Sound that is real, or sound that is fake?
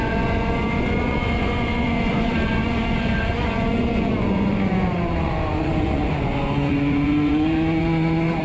fake